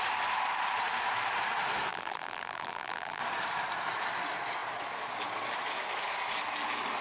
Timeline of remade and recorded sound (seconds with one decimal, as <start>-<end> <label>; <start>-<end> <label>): 0.0-1.9 recorded; 1.9-3.2 remade; 3.2-7.0 recorded